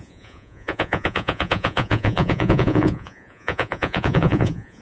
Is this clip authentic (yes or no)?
no